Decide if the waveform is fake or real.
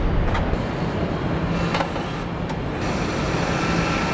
real